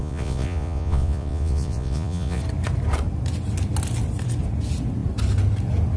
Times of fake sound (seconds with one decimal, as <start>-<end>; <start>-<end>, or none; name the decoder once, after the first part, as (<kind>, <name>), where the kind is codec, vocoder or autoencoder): 0.0-2.4 (vocoder, Vocos)